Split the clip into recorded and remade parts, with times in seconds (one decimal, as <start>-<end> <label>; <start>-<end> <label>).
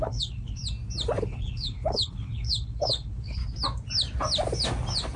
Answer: 0.0-0.6 remade; 0.6-1.2 recorded; 1.2-3.4 remade; 3.4-5.2 recorded